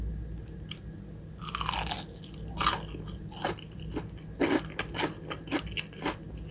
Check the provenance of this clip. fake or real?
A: real